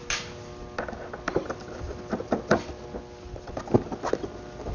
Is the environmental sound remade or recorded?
recorded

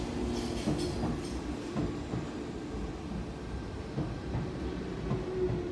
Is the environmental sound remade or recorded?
recorded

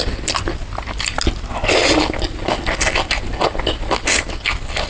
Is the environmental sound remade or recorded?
recorded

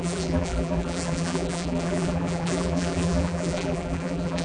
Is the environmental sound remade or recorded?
remade